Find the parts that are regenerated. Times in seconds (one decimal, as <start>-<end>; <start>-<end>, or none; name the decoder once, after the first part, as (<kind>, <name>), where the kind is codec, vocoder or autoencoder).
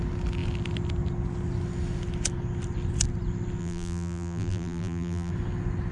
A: 3.6-5.3 (vocoder, BigVGAN v2)